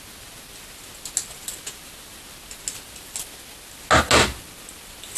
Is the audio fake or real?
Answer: real